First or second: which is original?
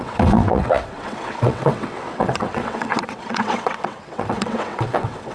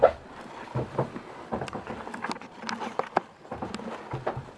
second